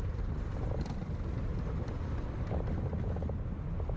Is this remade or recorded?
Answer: recorded